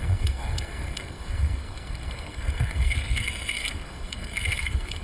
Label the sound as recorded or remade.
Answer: remade